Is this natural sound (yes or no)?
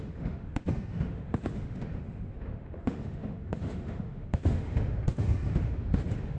no